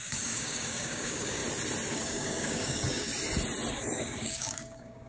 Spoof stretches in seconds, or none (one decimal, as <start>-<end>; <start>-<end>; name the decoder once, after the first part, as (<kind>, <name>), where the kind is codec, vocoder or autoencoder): 0.0-1.4 (codec, DAC); 1.9-3.1; 3.7-5.1